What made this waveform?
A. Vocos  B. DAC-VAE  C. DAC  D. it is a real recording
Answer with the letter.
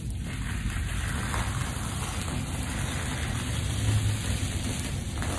D